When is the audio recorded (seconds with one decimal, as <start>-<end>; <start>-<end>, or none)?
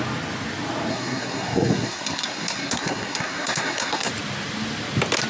0.0-0.9; 4.1-5.3